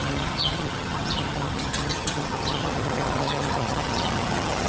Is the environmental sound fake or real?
fake